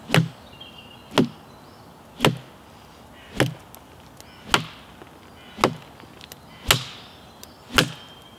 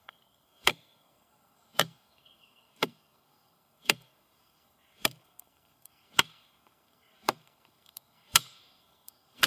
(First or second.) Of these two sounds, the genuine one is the first